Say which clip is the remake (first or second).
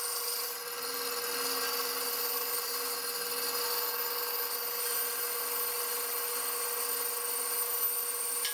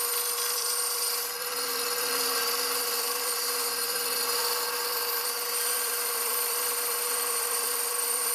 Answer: second